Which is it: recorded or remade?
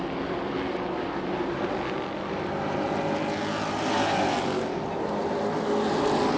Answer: recorded